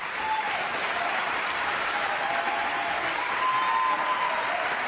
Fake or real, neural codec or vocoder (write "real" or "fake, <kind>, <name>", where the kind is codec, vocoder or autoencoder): real